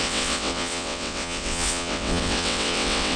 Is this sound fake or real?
fake